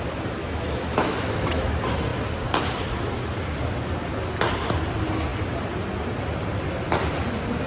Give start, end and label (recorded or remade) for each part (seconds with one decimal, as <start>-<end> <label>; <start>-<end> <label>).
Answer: 0.0-0.4 recorded; 0.4-1.7 remade; 1.7-7.7 recorded